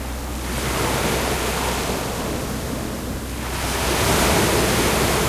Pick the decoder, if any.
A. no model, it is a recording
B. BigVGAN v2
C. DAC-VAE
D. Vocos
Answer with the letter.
A